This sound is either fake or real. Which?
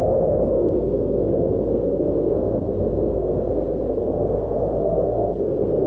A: fake